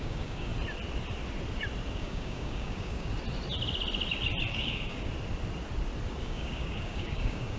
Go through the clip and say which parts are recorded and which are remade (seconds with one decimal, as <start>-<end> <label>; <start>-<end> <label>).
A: 0.0-0.5 remade; 0.5-1.9 recorded; 1.9-3.1 remade; 3.1-4.5 recorded; 4.5-5.1 remade; 5.1-6.2 recorded; 6.2-7.6 remade